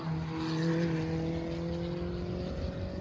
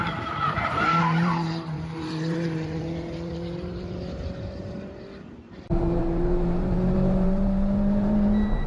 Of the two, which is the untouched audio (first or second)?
first